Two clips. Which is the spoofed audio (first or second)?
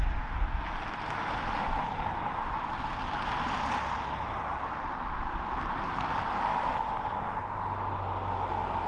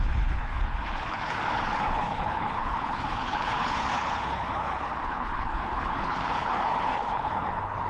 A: second